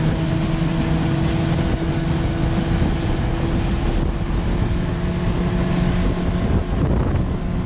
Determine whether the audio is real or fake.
real